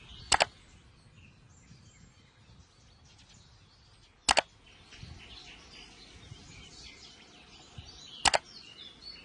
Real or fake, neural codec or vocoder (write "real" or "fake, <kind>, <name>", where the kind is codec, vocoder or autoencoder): real